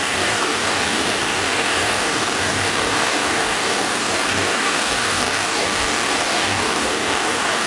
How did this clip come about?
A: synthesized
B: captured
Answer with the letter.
A